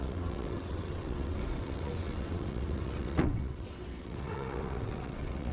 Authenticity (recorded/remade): remade